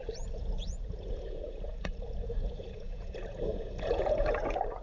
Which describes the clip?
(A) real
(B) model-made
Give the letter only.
B